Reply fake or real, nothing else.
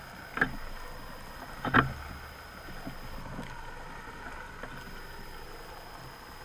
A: real